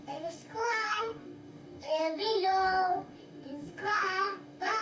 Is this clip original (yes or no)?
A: no